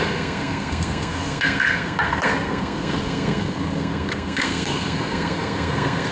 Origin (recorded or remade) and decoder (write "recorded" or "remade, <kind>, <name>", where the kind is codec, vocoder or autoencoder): remade, codec, SNAC